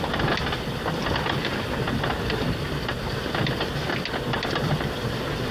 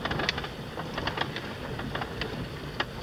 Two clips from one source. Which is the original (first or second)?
second